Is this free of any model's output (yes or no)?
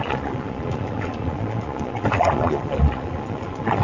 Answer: no